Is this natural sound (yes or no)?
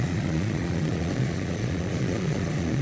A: no